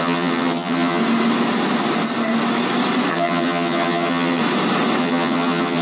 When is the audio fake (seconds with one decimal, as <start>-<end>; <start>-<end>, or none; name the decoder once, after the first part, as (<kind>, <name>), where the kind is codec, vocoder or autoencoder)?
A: 0.0-1.0 (vocoder, HiFi-GAN); 3.1-4.4; 5.0-5.8